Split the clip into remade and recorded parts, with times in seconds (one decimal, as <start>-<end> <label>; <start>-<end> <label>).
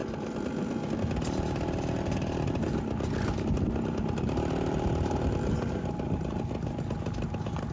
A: 0.0-7.7 recorded